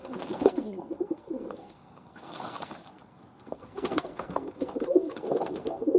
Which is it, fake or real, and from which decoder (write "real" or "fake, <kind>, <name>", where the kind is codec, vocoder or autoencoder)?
fake, codec, SNAC